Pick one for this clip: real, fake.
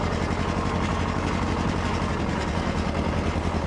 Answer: real